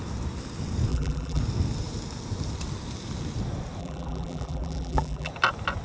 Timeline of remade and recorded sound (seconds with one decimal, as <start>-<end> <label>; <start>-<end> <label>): 0.0-0.9 recorded; 0.9-1.4 remade; 1.4-3.8 recorded; 3.8-5.3 remade; 5.3-5.8 recorded